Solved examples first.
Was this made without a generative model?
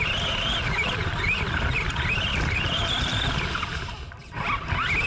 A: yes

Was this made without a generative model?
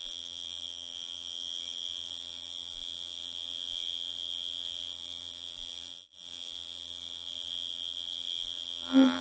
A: no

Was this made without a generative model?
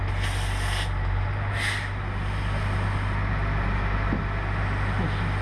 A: yes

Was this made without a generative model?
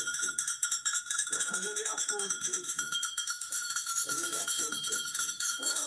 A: no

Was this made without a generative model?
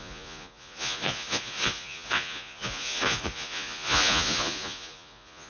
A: no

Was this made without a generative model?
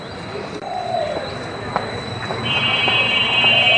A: no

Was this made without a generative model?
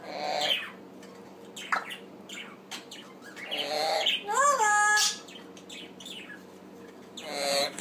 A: yes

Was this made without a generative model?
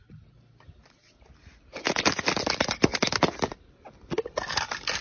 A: yes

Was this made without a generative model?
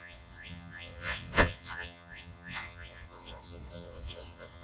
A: no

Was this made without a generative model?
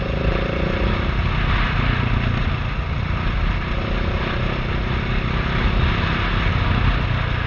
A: yes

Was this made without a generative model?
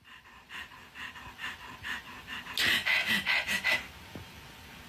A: yes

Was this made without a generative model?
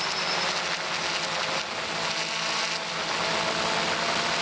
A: yes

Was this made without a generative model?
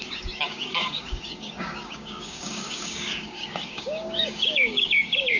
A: no